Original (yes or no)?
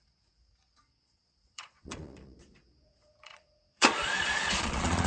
no